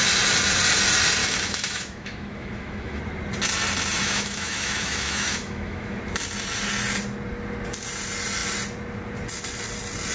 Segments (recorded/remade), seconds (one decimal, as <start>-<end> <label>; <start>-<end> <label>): 0.0-1.2 recorded; 1.2-3.0 remade; 3.0-4.0 recorded; 4.0-6.0 remade; 6.0-10.1 recorded